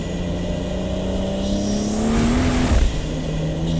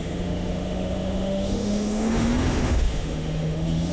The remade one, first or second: second